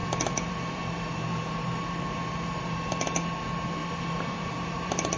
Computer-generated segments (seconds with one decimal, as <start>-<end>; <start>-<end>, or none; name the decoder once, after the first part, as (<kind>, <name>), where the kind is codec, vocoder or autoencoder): 0.0-2.9 (vocoder, BigVGAN v2); 3.8-5.2